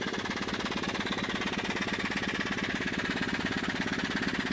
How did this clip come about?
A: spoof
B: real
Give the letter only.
B